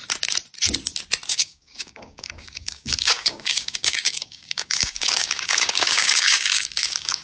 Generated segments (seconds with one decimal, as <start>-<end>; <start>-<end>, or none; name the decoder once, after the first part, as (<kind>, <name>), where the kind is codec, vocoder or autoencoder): 1.3-7.2 (codec, DAC)